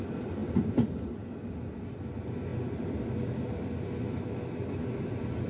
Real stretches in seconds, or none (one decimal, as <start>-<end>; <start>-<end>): 0.0-0.4; 1.2-5.5